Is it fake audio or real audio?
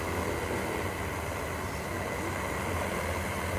real